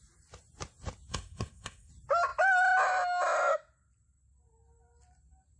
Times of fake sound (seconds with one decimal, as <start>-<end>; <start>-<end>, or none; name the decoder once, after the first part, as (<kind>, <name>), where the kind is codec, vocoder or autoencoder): 1.1-1.9 (codec, SNAC)